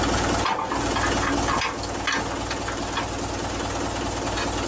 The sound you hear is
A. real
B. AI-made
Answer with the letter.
A